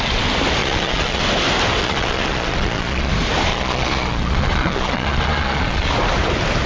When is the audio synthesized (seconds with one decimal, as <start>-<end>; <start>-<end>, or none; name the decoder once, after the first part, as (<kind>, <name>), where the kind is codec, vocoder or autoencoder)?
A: 0.6-1.2 (vocoder, Vocos); 1.8-3.1; 3.5-5.9

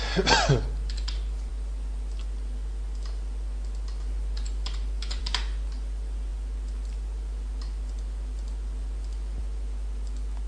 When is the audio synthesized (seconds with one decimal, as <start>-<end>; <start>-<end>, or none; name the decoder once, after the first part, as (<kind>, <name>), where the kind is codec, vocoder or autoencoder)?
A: none